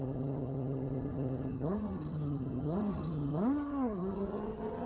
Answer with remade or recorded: remade